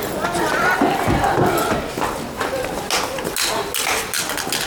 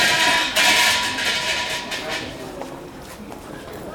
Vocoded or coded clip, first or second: second